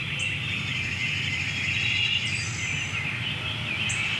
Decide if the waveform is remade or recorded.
recorded